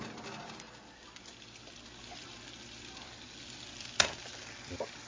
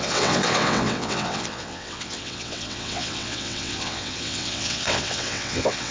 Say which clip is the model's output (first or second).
second